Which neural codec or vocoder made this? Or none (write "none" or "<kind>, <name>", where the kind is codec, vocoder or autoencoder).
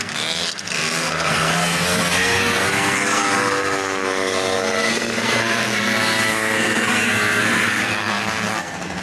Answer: codec, SNAC